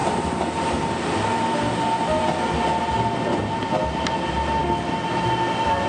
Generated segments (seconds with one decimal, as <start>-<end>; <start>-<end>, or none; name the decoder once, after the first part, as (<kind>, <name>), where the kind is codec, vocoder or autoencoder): none